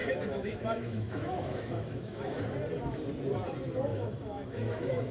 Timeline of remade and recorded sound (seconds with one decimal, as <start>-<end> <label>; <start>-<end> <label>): 0.0-2.4 remade; 2.4-3.9 recorded; 3.9-5.1 remade

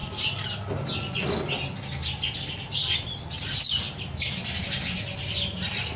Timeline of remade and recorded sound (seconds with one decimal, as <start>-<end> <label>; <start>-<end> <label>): 0.0-6.0 recorded